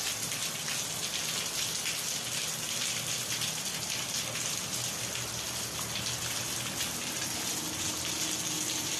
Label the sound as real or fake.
real